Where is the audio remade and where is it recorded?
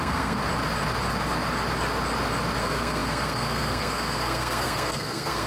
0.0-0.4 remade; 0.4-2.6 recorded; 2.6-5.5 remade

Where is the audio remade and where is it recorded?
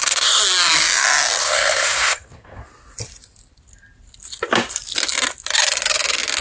0.0-0.4 remade; 0.4-1.4 recorded; 1.4-2.6 remade; 2.6-6.4 recorded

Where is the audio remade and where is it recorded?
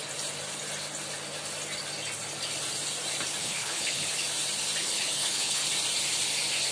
0.0-3.4 recorded; 3.4-4.1 remade; 4.1-4.8 recorded; 4.8-5.6 remade; 5.6-6.7 recorded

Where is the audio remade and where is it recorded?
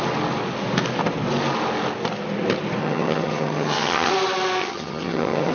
0.0-2.8 recorded; 2.8-4.1 remade; 4.1-4.6 recorded; 4.6-5.5 remade